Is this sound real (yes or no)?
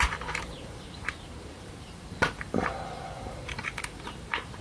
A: no